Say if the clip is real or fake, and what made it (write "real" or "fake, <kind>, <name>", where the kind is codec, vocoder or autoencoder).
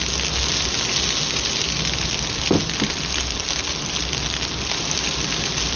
real